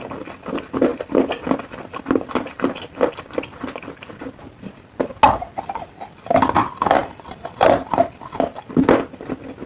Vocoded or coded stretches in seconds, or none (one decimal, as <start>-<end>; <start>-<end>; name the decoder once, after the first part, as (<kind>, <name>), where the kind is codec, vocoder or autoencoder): none